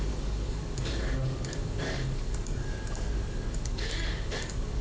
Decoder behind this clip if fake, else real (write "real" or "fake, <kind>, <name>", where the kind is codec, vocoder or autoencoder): fake, codec, DAC